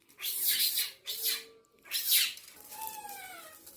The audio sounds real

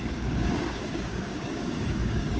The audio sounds fake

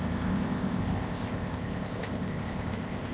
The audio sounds fake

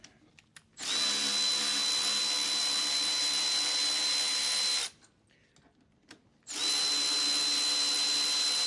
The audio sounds real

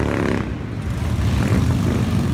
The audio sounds real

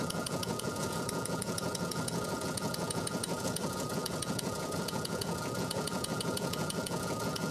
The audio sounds fake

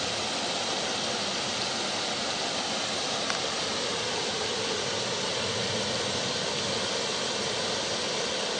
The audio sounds real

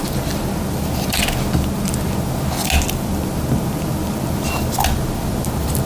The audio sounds real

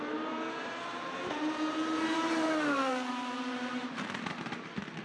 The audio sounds fake